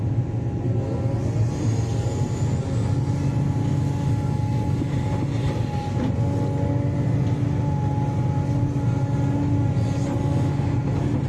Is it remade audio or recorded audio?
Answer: recorded